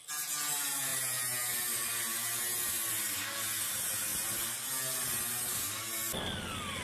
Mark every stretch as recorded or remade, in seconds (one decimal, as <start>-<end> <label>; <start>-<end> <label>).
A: 0.0-6.8 recorded